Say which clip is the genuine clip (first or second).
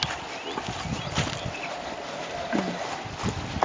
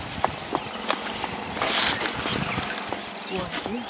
first